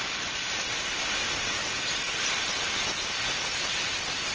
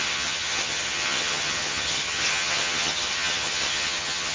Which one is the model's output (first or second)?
second